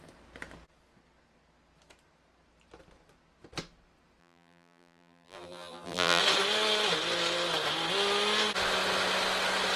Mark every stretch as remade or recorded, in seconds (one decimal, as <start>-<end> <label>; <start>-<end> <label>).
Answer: 0.0-4.2 recorded; 4.2-6.2 remade; 6.2-9.8 recorded